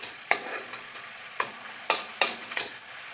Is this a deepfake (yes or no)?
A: yes